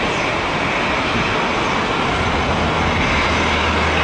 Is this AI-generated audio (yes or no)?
no